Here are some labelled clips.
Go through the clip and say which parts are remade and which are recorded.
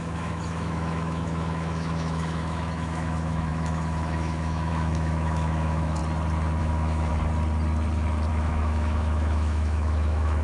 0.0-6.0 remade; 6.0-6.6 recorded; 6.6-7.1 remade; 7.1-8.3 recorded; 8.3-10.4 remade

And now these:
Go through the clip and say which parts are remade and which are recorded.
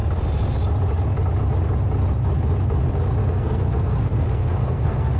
0.0-3.2 recorded; 3.2-5.2 remade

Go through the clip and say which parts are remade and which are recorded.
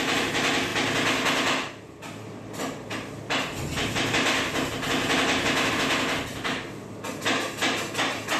0.0-8.4 recorded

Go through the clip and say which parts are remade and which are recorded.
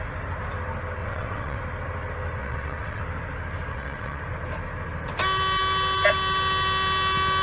0.0-1.0 recorded; 1.0-1.6 remade; 1.6-2.4 recorded; 2.4-3.0 remade; 3.0-3.7 recorded; 3.7-4.2 remade; 4.2-7.4 recorded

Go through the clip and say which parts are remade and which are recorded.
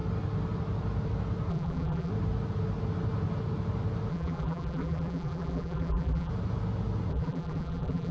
0.0-1.5 recorded; 1.5-2.1 remade; 2.1-4.1 recorded; 4.1-6.3 remade; 6.3-7.1 recorded; 7.1-8.1 remade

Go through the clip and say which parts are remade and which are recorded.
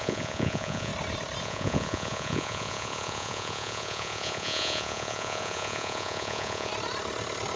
0.0-0.9 remade; 0.9-1.4 recorded; 1.4-6.7 remade; 6.7-7.6 recorded